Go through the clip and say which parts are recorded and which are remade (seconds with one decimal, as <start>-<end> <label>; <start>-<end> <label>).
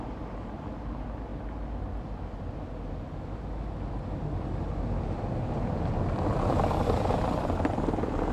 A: 0.0-8.3 recorded